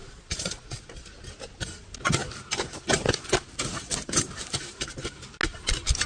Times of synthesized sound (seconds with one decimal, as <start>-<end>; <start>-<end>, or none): 0.0-0.9